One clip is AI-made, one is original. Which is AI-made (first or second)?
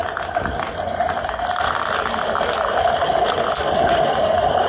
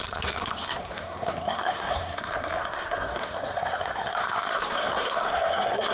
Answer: second